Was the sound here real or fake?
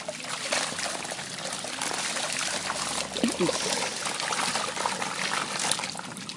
real